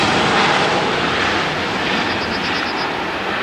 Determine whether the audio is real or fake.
real